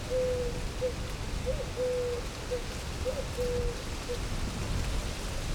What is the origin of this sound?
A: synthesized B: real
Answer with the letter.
B